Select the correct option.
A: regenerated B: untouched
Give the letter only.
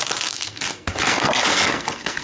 A